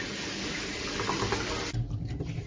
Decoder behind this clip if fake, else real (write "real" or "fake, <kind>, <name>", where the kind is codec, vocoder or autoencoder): real